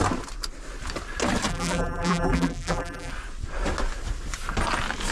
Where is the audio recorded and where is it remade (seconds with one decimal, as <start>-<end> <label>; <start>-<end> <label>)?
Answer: 0.0-1.5 recorded; 1.5-3.1 remade; 3.1-5.1 recorded